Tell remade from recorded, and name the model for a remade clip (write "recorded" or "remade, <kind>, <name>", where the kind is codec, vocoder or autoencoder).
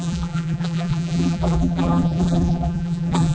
remade, vocoder, BigVGAN v2